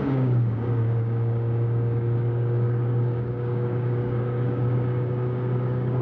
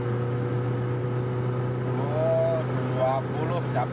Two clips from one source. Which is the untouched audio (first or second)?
second